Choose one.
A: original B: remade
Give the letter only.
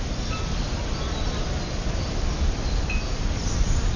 A